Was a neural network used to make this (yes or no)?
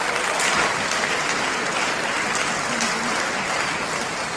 no